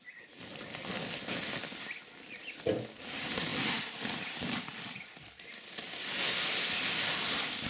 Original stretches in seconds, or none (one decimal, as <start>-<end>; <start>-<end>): 0.0-3.5; 5.9-7.7